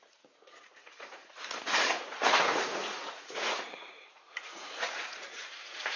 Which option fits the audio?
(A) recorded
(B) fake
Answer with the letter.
B